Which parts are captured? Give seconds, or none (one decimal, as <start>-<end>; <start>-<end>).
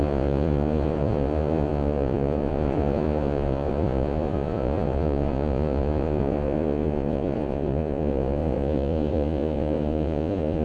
none